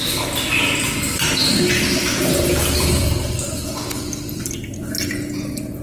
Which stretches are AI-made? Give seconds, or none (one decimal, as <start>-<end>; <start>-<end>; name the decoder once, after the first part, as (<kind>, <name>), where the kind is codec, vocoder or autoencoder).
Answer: 2.0-2.9 (vocoder, BigVGAN v2)